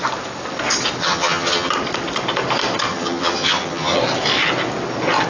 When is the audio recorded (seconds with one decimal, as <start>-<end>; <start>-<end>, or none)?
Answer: 0.0-1.0; 1.7-2.9; 4.0-5.3